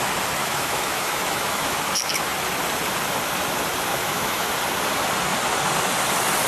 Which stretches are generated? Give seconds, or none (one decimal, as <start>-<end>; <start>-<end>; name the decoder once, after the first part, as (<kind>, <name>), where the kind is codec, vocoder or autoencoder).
0.4-1.8 (autoencoder, DAC-VAE); 3.9-4.5